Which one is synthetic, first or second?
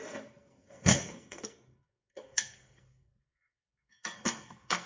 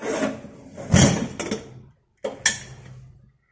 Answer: first